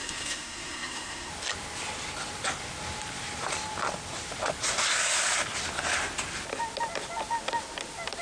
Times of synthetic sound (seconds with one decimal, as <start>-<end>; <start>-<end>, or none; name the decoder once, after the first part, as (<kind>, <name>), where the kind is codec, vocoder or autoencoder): 0.0-1.3 (codec, SNAC)